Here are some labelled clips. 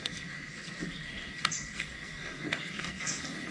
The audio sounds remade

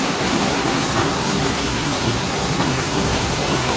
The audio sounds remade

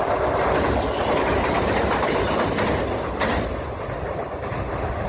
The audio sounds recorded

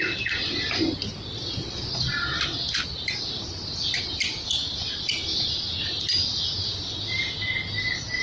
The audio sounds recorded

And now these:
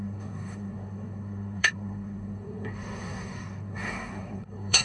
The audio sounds remade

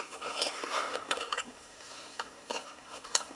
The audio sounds remade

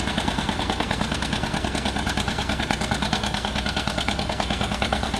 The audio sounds remade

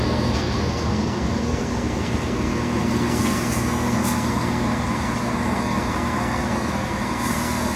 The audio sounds remade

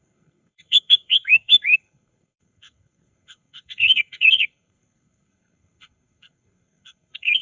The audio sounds remade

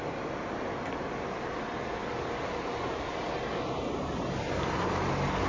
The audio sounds recorded